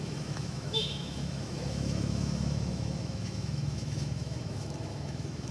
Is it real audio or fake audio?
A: fake